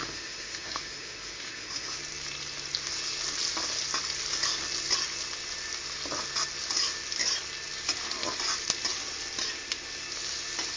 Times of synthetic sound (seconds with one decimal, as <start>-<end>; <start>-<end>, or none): 0.0-2.0